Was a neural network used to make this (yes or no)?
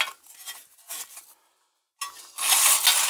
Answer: no